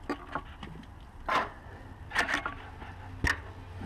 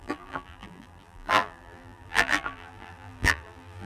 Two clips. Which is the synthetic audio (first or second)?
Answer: second